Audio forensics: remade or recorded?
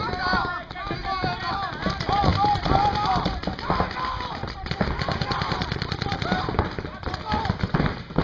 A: recorded